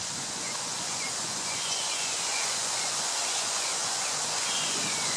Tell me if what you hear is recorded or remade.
remade